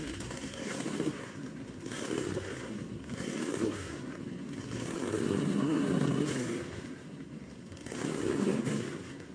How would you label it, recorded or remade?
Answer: remade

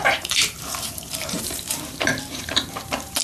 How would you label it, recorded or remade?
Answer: remade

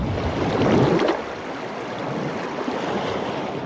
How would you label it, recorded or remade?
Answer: recorded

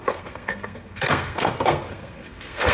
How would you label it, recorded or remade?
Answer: remade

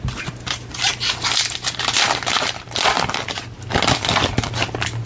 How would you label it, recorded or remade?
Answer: recorded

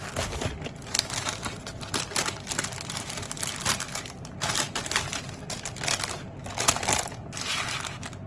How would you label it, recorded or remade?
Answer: recorded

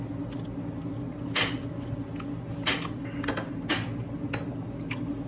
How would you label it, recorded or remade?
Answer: recorded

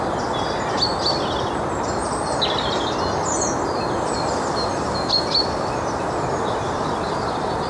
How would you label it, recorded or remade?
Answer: recorded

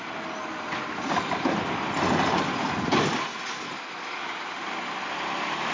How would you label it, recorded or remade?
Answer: recorded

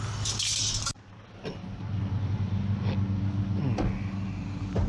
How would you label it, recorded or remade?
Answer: recorded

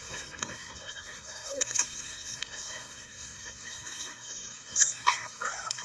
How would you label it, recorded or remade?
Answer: remade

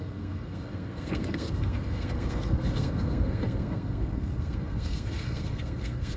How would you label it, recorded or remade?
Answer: remade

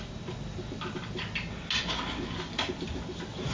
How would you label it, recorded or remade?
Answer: recorded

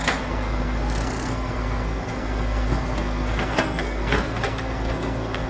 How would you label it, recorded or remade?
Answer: remade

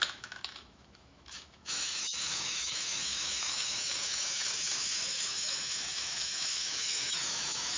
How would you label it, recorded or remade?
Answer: remade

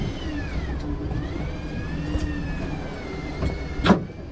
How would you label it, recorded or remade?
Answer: recorded